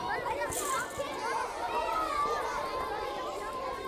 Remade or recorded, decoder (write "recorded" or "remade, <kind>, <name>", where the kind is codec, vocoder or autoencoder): recorded